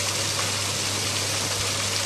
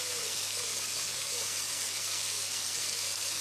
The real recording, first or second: first